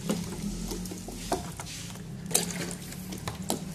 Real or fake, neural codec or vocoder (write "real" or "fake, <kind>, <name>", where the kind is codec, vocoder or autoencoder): real